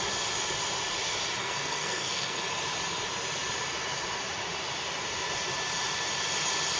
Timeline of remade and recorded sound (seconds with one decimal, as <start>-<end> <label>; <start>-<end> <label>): 0.0-1.4 recorded; 1.4-2.4 remade; 2.4-6.8 recorded